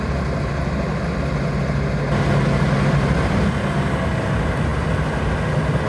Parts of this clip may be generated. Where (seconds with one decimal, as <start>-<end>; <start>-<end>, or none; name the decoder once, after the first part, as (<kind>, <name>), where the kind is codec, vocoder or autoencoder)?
none